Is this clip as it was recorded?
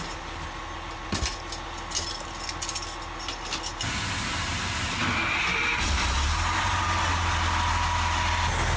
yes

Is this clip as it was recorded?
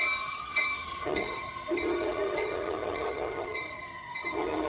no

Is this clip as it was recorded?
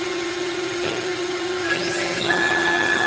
no